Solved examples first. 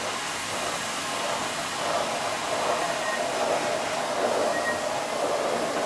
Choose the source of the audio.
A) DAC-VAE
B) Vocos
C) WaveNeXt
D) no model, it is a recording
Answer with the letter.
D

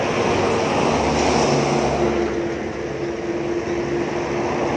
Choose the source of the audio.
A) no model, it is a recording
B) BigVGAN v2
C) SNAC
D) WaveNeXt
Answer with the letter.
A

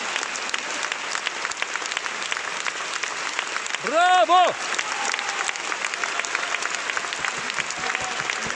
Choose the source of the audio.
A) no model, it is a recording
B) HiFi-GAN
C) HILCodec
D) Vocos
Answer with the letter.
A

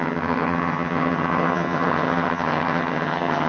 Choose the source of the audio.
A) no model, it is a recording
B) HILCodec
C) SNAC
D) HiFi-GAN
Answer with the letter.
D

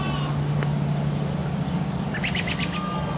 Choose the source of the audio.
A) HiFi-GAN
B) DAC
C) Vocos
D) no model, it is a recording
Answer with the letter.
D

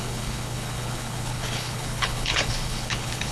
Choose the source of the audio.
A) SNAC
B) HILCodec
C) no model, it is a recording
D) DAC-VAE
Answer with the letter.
B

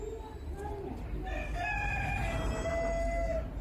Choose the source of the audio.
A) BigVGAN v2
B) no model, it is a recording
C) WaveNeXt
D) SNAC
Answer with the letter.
B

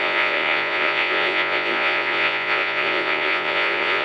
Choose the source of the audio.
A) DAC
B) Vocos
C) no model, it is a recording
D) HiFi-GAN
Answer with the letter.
B